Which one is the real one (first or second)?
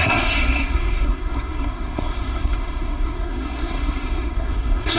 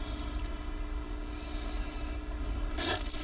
second